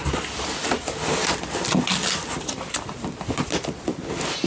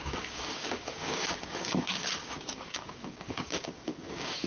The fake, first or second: second